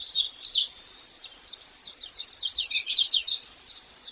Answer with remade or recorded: recorded